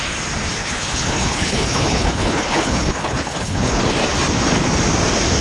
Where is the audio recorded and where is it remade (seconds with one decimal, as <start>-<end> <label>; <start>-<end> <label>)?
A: 0.0-0.6 recorded; 0.6-3.8 remade; 3.8-5.4 recorded